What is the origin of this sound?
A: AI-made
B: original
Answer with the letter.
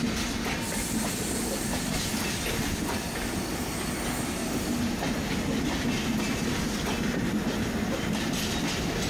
B